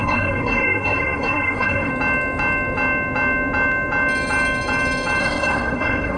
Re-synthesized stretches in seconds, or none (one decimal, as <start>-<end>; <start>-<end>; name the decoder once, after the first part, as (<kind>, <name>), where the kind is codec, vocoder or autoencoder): 0.0-1.9 (codec, SNAC); 5.2-6.2